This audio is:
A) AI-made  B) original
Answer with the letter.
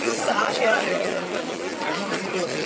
A